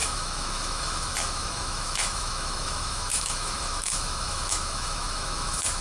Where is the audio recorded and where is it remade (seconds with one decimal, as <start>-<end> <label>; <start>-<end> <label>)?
0.0-5.8 remade